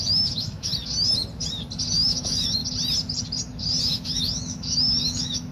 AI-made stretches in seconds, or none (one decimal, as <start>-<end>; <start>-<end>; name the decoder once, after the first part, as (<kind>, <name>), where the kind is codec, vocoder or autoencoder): 0.0-0.7 (autoencoder, DAC-VAE); 1.9-2.6; 3.8-5.5